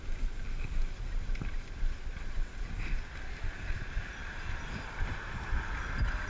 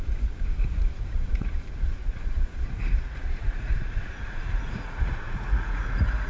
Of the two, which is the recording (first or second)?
first